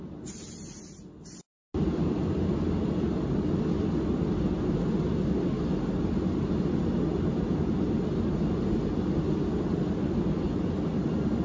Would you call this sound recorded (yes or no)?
yes